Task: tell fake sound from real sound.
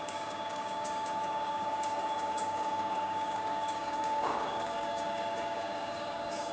fake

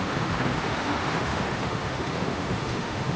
fake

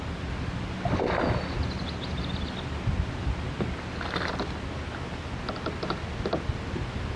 real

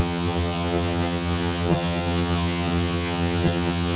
fake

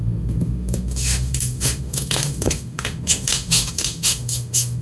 fake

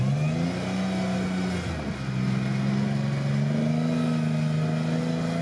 real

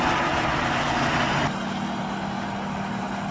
real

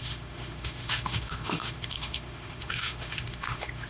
fake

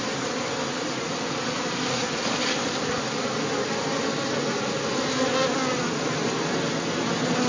real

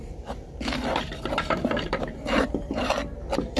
fake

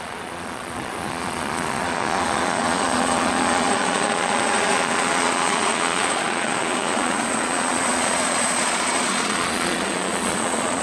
fake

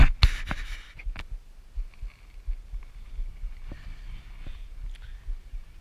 real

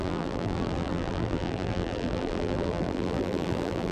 fake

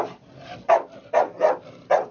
real